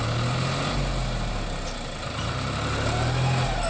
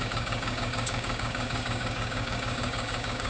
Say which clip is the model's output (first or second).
second